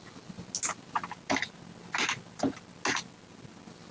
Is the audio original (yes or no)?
yes